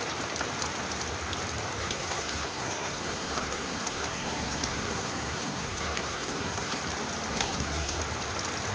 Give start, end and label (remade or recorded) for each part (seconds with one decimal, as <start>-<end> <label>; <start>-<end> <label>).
0.0-1.8 recorded; 1.8-6.8 remade; 6.8-7.3 recorded; 7.3-8.0 remade; 8.0-8.7 recorded